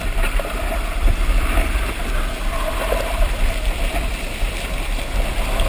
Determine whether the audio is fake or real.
fake